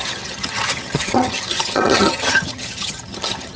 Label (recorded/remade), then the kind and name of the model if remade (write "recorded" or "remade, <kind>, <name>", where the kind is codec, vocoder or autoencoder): remade, vocoder, HiFi-GAN